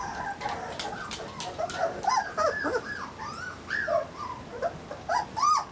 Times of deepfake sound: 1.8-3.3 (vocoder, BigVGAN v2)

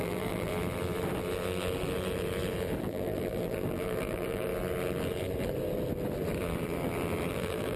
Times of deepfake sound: 0.0-0.5 (vocoder, BigVGAN v2); 2.8-4.5; 7.3-7.8

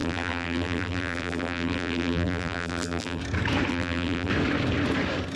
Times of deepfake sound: 0.0-3.2 (vocoder, BigVGAN v2); 3.7-4.3

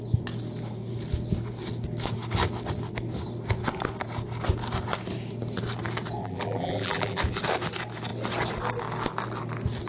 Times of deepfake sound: 6.2-7.2 (vocoder, BigVGAN v2)